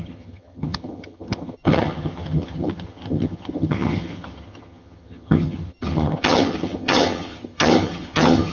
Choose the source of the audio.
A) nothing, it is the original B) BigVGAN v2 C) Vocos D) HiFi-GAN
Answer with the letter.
D